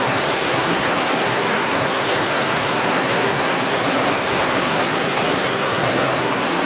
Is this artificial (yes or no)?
yes